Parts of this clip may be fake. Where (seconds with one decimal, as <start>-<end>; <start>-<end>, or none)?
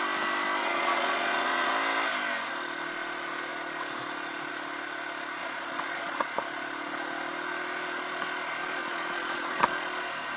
0.6-1.7; 5.4-6.2; 8.8-9.5